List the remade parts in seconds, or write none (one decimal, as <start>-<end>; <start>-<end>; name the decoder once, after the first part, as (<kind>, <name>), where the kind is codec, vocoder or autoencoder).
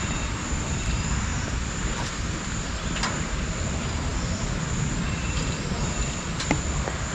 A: 0.0-4.1 (vocoder, BigVGAN v2); 4.9-7.1